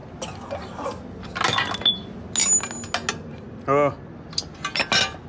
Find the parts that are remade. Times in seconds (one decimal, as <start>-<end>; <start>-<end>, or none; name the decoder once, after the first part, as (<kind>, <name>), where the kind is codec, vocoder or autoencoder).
none